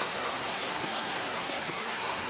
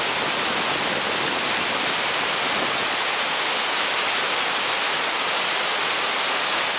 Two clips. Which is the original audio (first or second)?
second